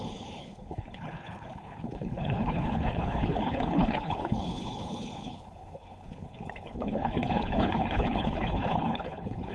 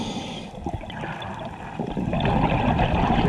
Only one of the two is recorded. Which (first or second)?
second